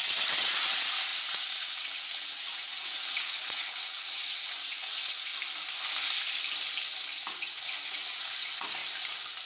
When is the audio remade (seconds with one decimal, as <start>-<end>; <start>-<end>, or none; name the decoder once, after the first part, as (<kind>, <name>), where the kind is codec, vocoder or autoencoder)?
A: 0.0-5.3 (vocoder, WaveNeXt); 7.3-8.8